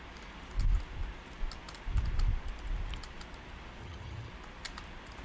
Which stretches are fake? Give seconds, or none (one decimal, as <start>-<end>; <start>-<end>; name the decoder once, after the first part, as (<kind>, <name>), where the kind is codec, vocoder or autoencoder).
3.8-4.3 (vocoder, HiFi-GAN)